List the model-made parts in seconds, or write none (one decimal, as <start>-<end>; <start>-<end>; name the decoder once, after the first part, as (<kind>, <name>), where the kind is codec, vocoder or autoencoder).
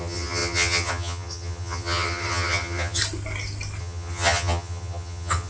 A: 0.0-3.0 (vocoder, HiFi-GAN); 3.8-5.5